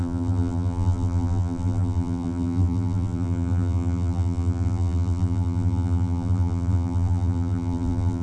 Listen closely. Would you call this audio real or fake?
fake